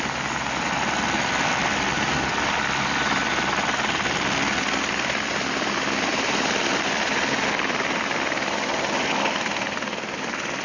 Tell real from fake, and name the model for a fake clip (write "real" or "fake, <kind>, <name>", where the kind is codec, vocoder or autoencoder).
real